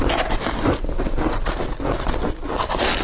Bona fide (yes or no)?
yes